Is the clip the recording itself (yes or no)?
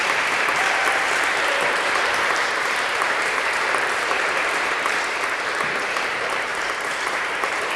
no